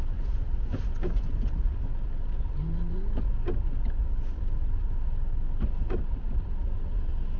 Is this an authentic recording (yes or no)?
yes